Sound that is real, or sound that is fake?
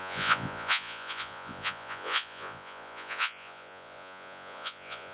fake